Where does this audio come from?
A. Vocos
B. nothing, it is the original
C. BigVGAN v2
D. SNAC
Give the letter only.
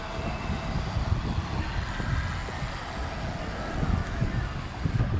B